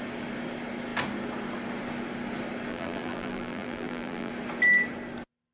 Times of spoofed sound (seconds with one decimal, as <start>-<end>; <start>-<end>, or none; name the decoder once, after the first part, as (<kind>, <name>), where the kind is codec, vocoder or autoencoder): 2.7-4.3 (vocoder, BigVGAN v2)